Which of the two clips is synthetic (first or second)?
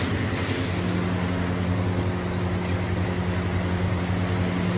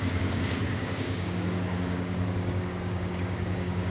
second